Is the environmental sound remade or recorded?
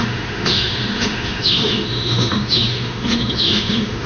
remade